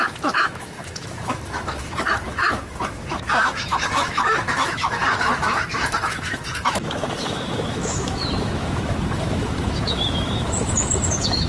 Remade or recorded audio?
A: remade